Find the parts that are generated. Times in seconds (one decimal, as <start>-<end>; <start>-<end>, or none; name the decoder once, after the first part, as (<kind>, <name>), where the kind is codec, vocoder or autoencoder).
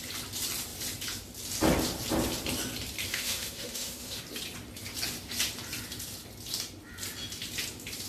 3.1-4.2 (autoencoder, DAC-VAE)